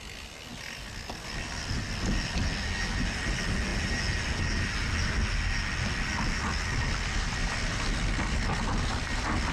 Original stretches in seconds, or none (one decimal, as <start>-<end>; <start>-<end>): 0.0-9.5